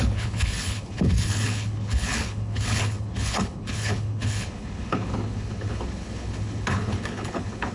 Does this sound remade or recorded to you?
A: remade